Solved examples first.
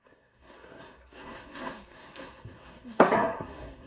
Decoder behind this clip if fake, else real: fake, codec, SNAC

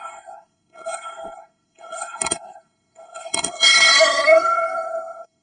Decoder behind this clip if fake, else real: fake, codec, SNAC